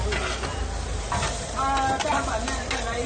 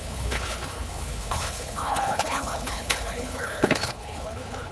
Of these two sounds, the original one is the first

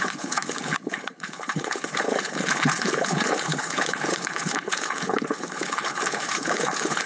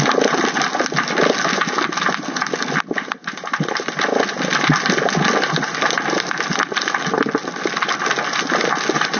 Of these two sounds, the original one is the second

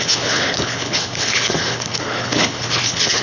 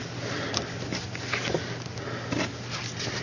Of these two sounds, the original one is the second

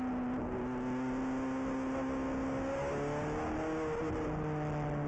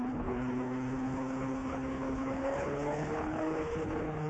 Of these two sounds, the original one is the first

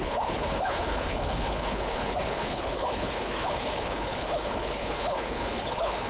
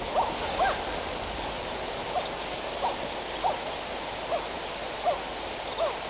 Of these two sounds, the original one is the second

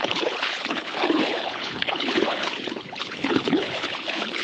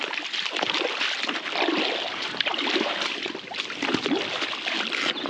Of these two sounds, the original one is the second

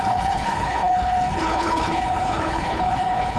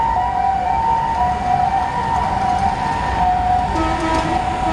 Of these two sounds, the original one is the second